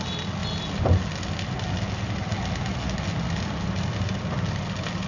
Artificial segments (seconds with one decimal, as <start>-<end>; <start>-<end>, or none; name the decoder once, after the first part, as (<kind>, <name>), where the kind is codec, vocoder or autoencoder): none